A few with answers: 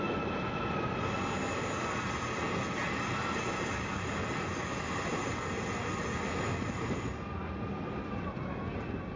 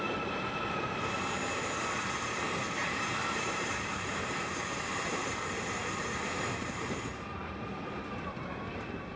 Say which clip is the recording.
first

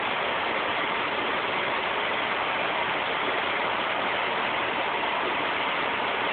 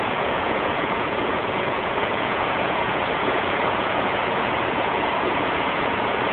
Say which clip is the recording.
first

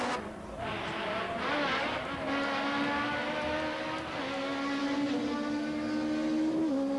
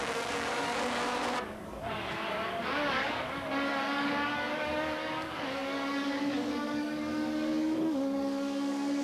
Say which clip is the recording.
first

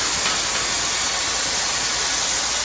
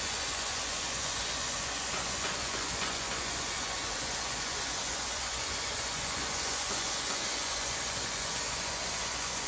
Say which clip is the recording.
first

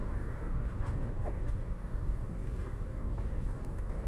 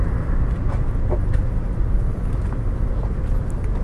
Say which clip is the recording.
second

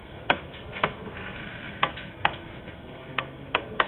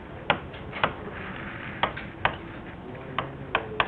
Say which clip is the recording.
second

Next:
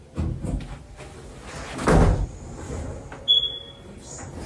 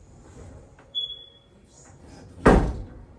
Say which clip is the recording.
first